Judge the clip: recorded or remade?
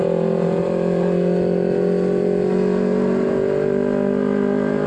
recorded